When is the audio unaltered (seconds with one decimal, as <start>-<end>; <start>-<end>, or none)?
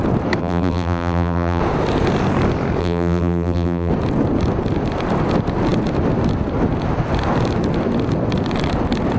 0.0-0.4; 1.6-2.8; 3.9-9.2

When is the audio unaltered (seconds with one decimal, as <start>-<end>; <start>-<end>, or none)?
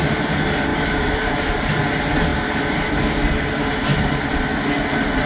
0.0-0.7; 1.7-5.3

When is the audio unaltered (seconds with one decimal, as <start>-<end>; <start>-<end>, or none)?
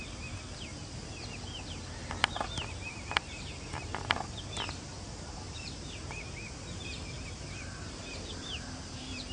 0.7-2.1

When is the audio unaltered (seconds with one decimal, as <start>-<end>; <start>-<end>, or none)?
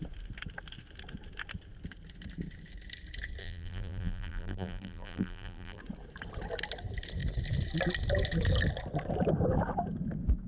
0.0-3.4; 5.8-10.5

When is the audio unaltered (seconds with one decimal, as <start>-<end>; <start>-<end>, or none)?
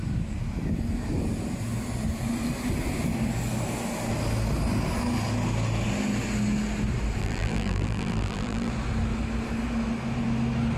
0.0-7.2; 8.7-10.8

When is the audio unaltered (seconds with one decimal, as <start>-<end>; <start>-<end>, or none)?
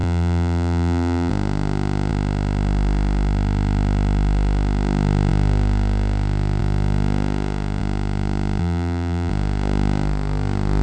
1.3-8.6; 9.3-10.8